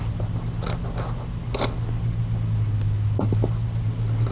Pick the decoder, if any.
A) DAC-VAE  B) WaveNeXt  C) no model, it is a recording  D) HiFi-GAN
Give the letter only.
C